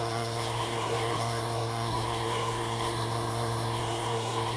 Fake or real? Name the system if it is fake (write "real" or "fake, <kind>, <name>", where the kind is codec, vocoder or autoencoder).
fake, codec, SNAC